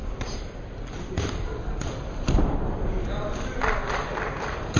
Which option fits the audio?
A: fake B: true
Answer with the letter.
B